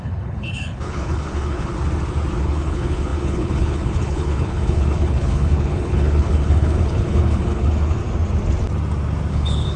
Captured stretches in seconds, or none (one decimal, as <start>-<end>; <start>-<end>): 1.7-2.4; 8.0-9.3